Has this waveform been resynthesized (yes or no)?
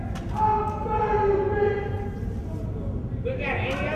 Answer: no